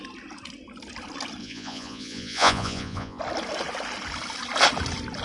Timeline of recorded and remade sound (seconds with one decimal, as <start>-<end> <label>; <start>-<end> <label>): 0.0-1.4 recorded; 1.4-3.2 remade; 3.2-5.2 recorded